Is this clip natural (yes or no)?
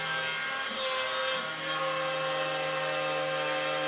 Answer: yes